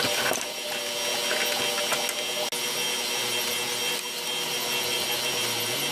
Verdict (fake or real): real